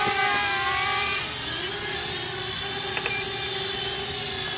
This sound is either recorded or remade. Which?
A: recorded